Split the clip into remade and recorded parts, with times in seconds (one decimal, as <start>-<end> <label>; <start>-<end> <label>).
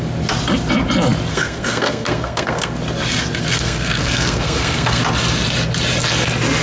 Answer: 0.0-1.3 recorded; 1.3-2.7 remade; 2.7-3.4 recorded; 3.4-5.0 remade; 5.0-6.6 recorded